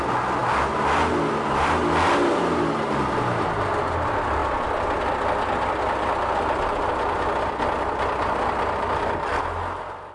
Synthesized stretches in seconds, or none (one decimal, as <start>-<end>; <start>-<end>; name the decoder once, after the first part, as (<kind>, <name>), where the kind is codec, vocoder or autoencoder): none